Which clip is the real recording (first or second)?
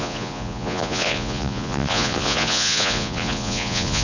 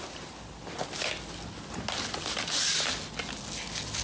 second